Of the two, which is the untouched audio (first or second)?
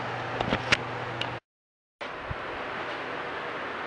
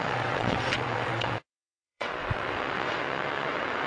first